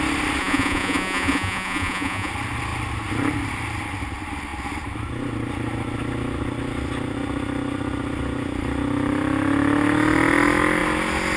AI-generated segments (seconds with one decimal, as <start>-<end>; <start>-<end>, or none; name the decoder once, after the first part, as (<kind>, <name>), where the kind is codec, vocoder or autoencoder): 0.4-2.3 (vocoder, Vocos)